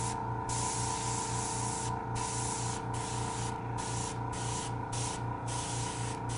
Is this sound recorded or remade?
recorded